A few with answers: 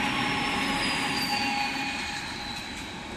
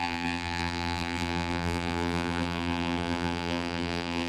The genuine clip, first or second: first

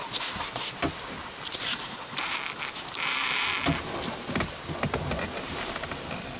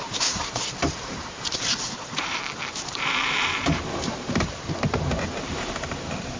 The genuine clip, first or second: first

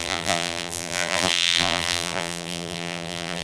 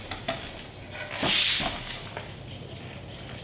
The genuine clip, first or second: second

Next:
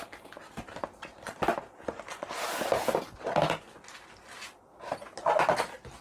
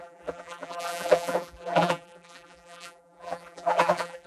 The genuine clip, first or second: first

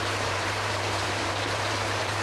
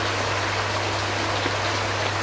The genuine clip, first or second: second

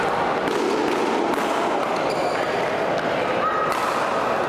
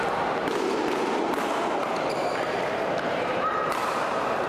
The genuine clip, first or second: first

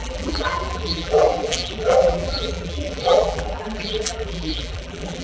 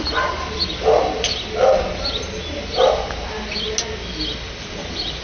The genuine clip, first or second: second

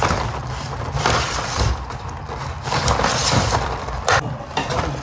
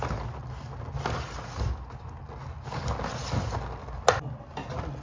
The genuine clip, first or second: second